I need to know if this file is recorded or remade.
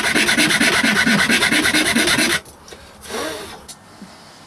recorded